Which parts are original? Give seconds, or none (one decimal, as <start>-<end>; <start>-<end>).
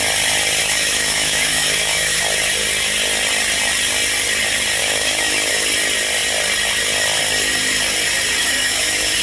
0.0-0.6; 2.2-4.8; 5.5-8.4